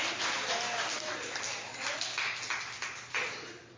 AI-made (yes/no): no